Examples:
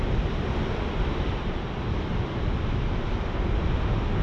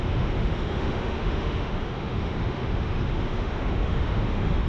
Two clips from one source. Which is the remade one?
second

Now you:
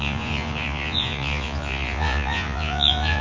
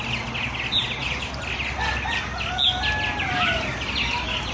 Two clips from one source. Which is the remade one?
first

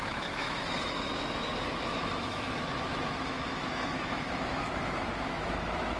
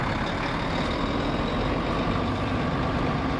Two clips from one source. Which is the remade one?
first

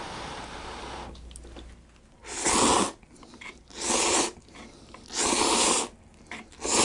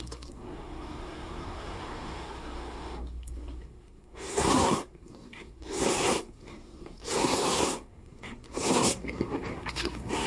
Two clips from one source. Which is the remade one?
second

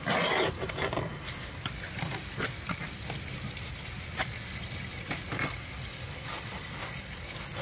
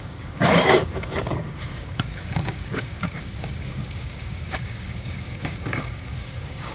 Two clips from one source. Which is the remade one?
second